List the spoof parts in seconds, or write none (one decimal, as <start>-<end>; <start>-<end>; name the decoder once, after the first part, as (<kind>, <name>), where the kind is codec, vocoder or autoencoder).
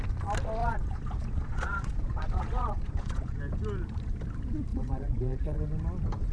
0.6-3.4 (vocoder, Vocos); 4.7-5.6